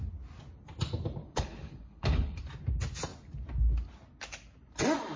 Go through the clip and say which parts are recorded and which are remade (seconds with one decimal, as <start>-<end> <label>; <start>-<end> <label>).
0.0-1.2 recorded; 1.2-2.4 remade; 2.4-5.2 recorded